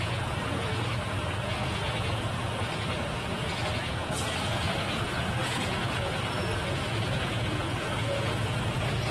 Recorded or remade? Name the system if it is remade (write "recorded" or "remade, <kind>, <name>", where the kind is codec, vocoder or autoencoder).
remade, vocoder, Vocos